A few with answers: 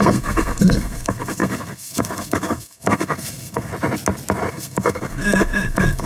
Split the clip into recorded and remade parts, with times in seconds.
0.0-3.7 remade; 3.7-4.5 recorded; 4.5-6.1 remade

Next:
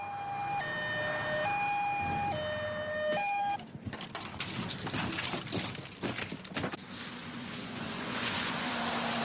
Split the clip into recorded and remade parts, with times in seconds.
0.0-7.2 recorded; 7.2-8.7 remade; 8.7-9.2 recorded